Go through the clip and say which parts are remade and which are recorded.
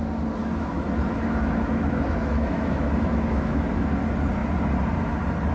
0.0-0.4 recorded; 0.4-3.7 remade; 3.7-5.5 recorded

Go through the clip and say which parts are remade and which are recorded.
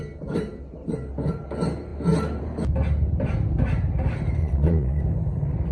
0.0-4.4 recorded; 4.4-5.0 remade; 5.0-5.7 recorded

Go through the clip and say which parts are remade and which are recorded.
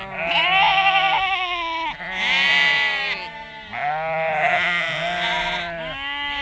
0.0-6.4 recorded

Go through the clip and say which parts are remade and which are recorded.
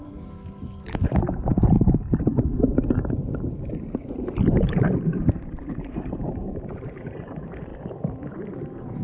0.0-7.7 remade; 7.7-8.3 recorded; 8.3-9.0 remade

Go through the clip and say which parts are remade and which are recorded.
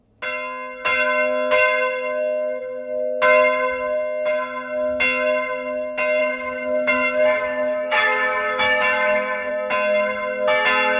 0.0-6.2 recorded; 6.2-9.5 remade; 9.5-11.0 recorded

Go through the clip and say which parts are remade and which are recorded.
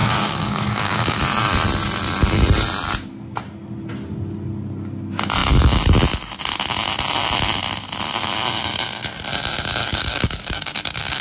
0.0-1.2 remade; 1.2-9.8 recorded; 9.8-11.2 remade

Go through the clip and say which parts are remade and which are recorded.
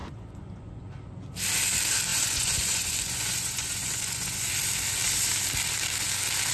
0.0-0.8 remade; 0.8-2.1 recorded; 2.1-4.5 remade; 4.5-6.5 recorded